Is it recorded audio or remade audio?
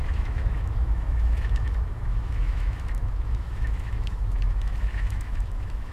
remade